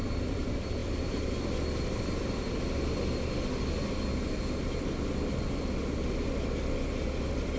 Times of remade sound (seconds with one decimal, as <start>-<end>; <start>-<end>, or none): none